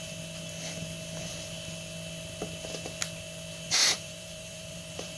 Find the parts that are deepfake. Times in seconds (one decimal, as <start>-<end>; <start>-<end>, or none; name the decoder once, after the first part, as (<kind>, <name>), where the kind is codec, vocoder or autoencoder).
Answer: 3.8-5.2 (vocoder, BigVGAN v2)